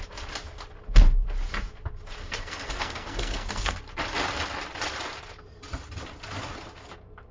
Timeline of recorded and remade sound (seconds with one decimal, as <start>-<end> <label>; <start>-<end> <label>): 0.0-2.2 recorded; 2.2-3.8 remade; 3.8-7.3 recorded